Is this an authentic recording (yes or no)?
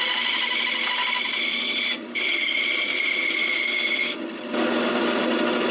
yes